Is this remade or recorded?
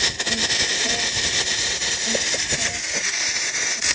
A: recorded